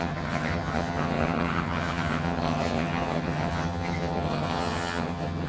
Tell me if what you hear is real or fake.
fake